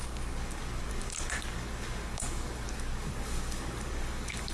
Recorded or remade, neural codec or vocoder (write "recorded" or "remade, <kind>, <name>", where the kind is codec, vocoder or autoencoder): remade, codec, DAC